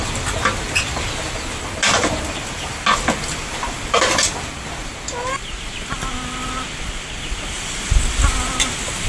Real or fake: real